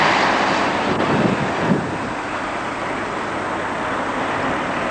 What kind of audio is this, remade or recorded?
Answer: remade